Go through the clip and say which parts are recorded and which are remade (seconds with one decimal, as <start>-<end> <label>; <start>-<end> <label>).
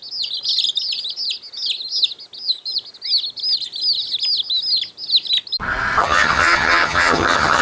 0.0-6.0 recorded; 6.0-7.6 remade